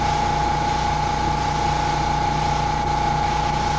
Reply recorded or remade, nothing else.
recorded